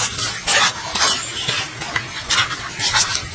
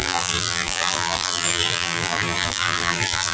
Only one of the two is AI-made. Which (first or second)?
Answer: second